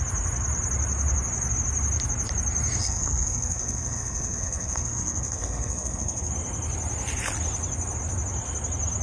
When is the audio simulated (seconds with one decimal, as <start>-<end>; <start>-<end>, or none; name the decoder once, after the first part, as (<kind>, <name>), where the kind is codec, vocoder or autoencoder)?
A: 2.8-6.3 (codec, SNAC)